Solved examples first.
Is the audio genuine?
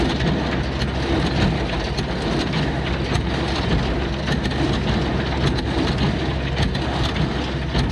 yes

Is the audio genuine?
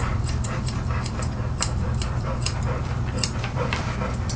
no